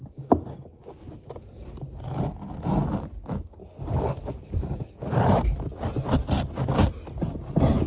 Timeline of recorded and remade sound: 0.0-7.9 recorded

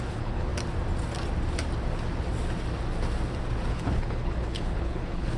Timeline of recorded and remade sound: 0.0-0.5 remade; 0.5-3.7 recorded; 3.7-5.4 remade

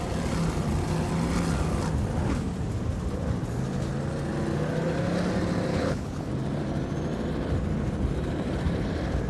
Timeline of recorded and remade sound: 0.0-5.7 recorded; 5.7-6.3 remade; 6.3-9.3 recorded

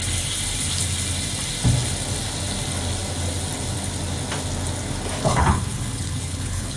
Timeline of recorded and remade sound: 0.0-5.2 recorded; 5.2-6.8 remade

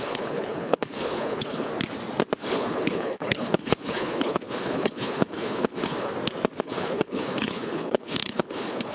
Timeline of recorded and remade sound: 0.0-1.7 remade; 1.7-2.4 recorded; 2.4-6.1 remade; 6.1-6.6 recorded; 6.6-8.9 remade

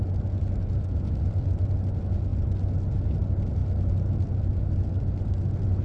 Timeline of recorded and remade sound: 0.0-5.8 recorded

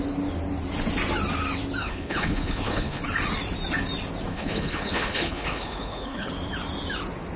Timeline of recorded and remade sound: 0.0-1.8 recorded; 1.8-3.0 remade; 3.0-4.3 recorded; 4.3-6.3 remade; 6.3-7.4 recorded